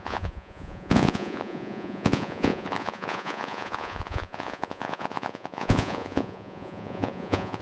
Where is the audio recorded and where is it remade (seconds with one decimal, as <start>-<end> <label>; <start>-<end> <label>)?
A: 0.0-7.6 remade